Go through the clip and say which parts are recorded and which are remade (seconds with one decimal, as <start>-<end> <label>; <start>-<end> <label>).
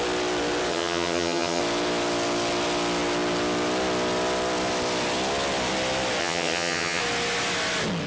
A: 0.0-0.7 recorded; 0.7-1.6 remade; 1.6-6.2 recorded; 6.2-7.0 remade; 7.0-8.1 recorded